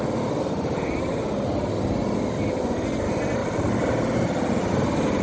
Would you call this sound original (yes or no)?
yes